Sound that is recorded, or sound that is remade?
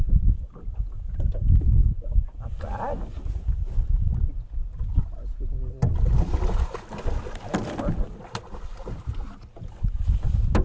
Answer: recorded